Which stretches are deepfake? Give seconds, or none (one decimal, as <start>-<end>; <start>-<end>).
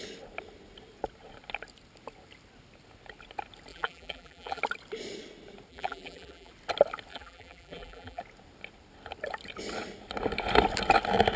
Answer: 3.7-4.6; 5.7-6.5; 7.1-8.2